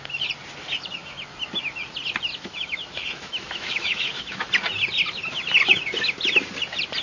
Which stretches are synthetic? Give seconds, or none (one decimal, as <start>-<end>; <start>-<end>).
2.3-4.5